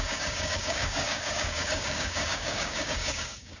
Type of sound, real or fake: fake